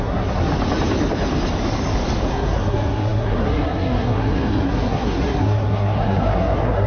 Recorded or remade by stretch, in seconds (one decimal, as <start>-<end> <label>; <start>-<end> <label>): 0.0-0.5 remade; 0.5-2.3 recorded; 2.3-6.9 remade